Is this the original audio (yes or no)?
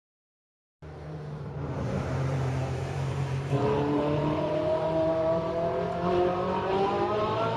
no